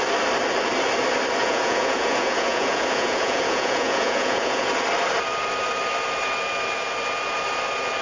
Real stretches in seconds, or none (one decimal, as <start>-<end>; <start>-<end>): 0.0-1.4; 4.7-8.0